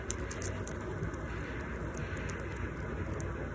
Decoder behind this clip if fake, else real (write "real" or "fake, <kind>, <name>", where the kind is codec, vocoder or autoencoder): real